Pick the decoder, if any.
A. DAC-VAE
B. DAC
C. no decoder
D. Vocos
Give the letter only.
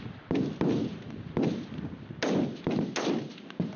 C